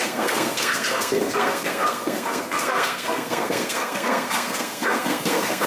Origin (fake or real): fake